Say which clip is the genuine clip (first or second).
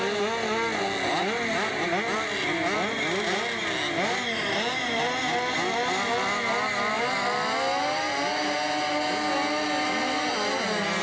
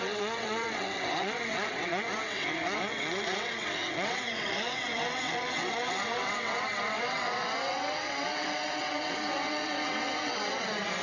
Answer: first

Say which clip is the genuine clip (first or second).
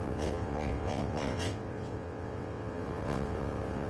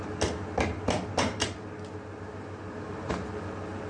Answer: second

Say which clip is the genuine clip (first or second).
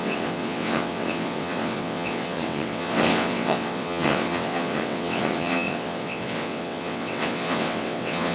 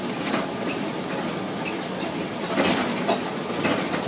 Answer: second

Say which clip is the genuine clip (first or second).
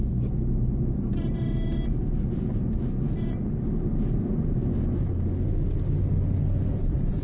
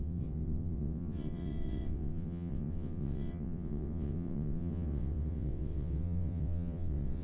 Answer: first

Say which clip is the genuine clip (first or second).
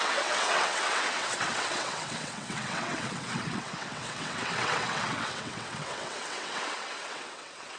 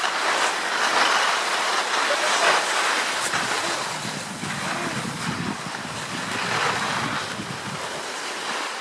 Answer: second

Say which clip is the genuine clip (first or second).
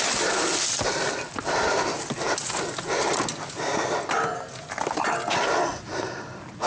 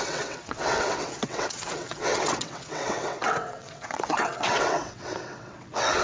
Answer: first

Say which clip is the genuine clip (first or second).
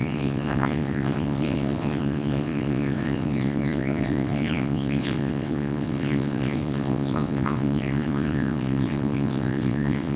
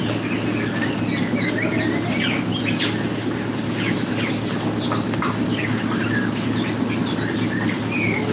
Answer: second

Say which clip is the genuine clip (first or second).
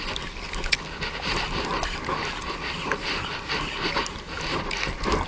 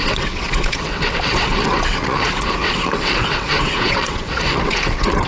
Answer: first